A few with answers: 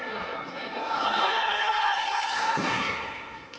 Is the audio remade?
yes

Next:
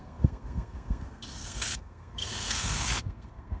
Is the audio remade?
yes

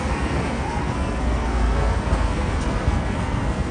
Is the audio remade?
yes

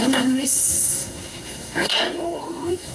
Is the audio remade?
yes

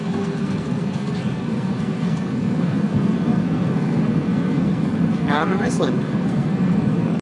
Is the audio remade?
yes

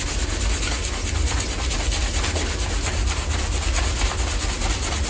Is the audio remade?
no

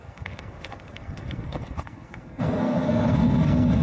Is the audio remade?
yes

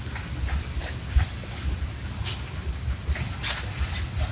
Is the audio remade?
no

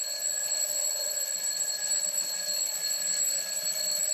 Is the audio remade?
no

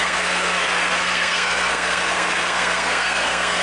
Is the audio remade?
yes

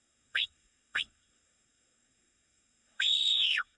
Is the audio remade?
yes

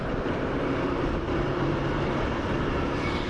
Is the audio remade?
no